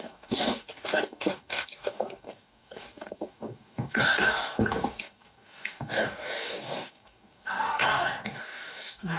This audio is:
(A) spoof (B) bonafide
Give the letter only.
A